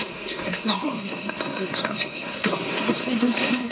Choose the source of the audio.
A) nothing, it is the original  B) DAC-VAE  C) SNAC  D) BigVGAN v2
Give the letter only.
C